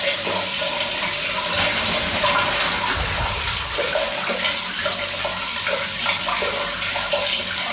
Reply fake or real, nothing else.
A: real